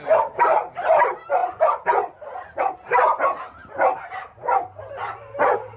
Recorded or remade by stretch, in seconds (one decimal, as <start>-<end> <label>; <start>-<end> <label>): 0.0-5.8 recorded